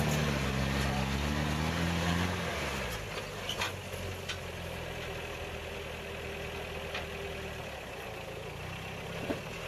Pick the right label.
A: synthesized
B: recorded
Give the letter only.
B